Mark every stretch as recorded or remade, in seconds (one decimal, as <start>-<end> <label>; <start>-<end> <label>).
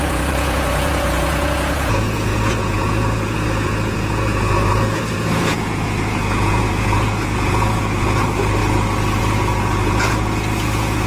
0.0-8.6 remade; 8.6-9.2 recorded; 9.2-11.1 remade